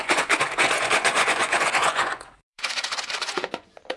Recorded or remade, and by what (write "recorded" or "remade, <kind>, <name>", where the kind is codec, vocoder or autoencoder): remade, vocoder, Vocos